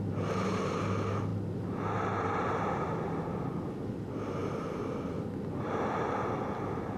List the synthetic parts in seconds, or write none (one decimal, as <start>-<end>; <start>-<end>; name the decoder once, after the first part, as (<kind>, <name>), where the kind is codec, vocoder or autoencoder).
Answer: none